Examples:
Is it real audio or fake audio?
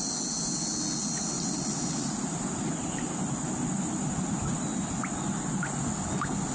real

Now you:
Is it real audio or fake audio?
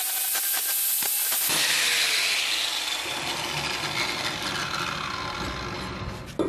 real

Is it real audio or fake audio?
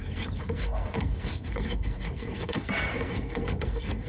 fake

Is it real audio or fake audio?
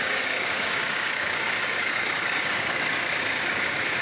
fake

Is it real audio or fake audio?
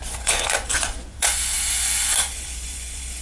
fake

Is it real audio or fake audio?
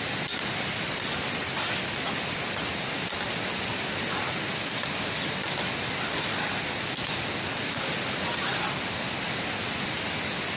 real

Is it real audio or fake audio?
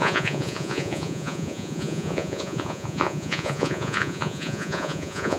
fake